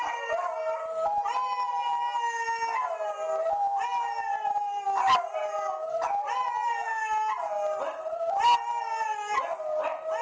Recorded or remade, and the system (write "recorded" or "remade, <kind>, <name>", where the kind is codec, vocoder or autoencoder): recorded